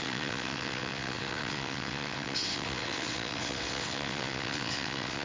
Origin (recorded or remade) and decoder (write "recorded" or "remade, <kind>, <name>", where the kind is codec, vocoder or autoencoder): remade, vocoder, WaveNeXt